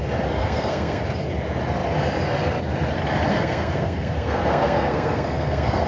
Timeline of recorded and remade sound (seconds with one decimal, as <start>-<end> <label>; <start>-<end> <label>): 0.0-0.4 recorded; 0.4-1.0 remade; 1.0-3.3 recorded; 3.3-5.9 remade